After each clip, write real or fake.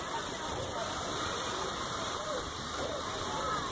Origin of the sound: fake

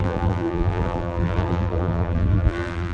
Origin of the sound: fake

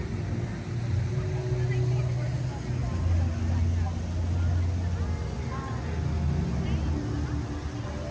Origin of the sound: real